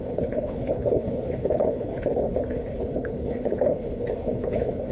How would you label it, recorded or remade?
remade